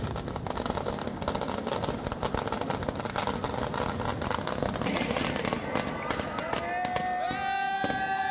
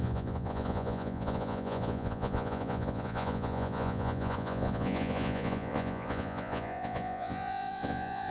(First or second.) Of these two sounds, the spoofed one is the second